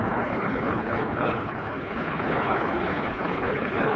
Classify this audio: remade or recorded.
remade